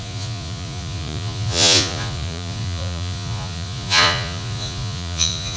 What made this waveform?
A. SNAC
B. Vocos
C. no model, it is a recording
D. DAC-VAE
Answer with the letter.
B